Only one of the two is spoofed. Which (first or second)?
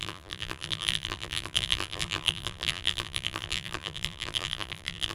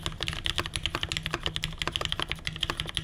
first